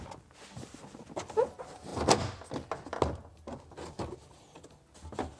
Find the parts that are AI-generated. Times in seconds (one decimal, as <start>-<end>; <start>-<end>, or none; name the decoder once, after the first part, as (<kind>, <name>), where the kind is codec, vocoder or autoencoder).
none